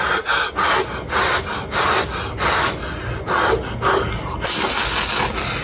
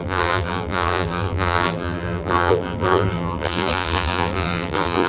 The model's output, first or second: second